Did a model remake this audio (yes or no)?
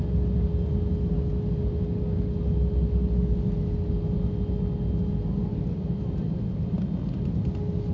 no